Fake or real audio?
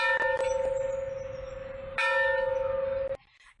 real